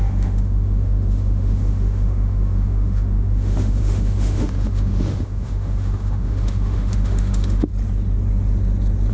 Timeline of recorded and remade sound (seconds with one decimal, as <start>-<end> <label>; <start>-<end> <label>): 0.0-7.7 remade; 7.7-9.1 recorded